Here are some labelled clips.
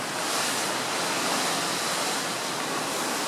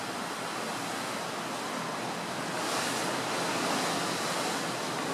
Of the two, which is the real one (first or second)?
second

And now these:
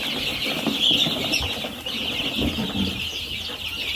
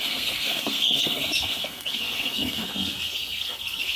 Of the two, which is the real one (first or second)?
first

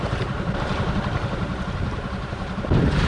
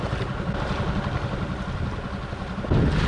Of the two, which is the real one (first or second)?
second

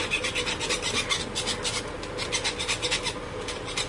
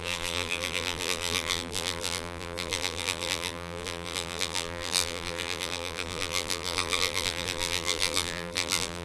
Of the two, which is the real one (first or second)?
first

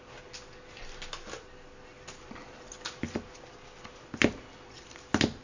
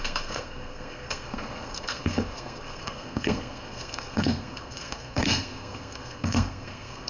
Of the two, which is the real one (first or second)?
first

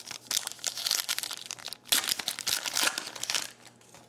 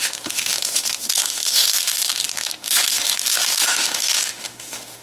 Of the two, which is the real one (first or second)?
first